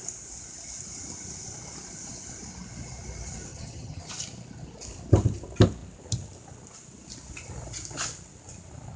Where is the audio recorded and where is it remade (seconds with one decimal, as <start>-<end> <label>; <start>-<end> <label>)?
0.0-3.5 recorded; 3.5-4.0 remade; 4.0-9.0 recorded